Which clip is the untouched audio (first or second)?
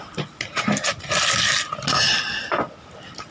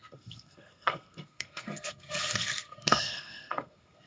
first